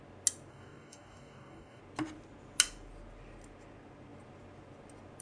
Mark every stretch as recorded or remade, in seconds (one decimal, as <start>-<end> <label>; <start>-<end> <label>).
0.0-0.5 recorded; 0.5-1.8 remade; 1.8-5.2 recorded